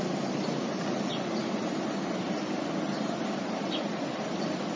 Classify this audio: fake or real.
real